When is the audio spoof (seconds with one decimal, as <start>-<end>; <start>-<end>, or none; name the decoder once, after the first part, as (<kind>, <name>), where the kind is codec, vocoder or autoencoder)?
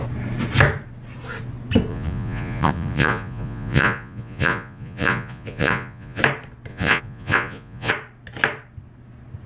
1.9-6.2 (vocoder, Vocos); 6.7-7.9